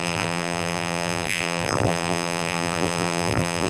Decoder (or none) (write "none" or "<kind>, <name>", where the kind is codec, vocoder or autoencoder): vocoder, BigVGAN v2